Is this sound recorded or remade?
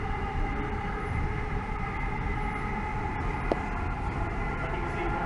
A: recorded